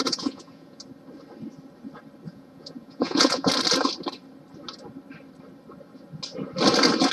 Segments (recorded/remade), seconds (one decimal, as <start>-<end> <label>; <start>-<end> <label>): 0.0-0.8 remade; 0.8-2.3 recorded; 2.3-3.5 remade; 3.5-7.1 recorded